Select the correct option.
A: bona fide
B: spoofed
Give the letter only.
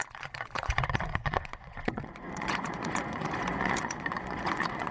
B